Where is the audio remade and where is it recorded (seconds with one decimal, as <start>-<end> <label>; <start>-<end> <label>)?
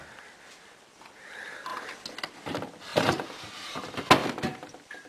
0.0-2.9 recorded; 2.9-3.8 remade; 3.8-4.2 recorded; 4.2-5.1 remade